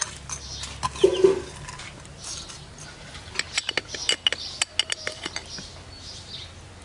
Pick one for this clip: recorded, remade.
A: recorded